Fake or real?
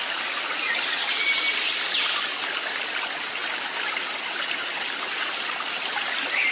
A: real